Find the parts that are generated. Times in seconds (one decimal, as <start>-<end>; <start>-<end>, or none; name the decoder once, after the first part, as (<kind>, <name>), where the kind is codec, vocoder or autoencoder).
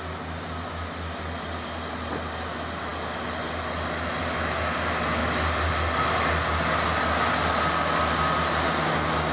none